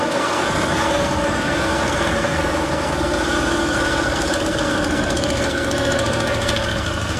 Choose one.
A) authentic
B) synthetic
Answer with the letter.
B